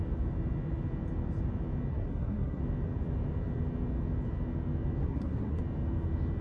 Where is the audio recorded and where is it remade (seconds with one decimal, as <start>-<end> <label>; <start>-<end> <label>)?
0.0-1.9 recorded; 1.9-2.6 remade; 2.6-5.0 recorded; 5.0-5.6 remade; 5.6-6.4 recorded